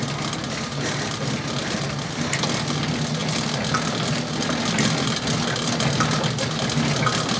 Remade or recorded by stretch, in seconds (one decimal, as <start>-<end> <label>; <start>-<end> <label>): 0.0-7.4 recorded